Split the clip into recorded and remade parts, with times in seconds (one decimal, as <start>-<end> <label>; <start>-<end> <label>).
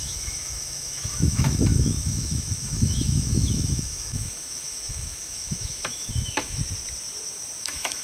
0.0-6.6 remade; 6.6-7.6 recorded; 7.6-8.0 remade